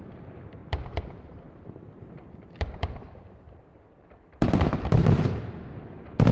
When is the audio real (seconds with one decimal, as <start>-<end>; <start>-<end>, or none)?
0.0-0.6; 2.0-3.7; 5.4-6.3